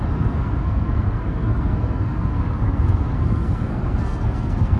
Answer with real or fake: fake